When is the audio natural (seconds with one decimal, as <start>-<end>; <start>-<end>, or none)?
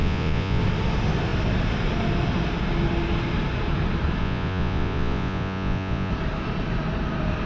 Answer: 0.6-4.2; 6.1-7.5